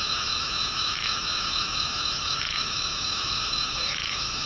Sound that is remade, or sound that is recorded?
remade